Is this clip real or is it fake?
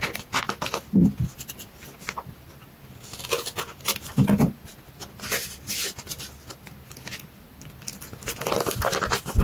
real